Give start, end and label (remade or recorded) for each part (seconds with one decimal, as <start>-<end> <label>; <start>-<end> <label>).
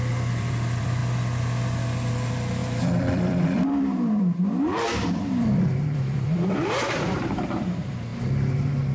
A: 0.0-1.0 remade; 1.0-2.1 recorded; 2.1-8.1 remade; 8.1-8.9 recorded